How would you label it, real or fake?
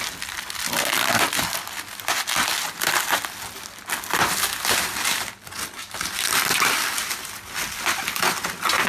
real